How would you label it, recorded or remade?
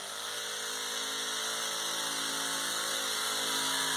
recorded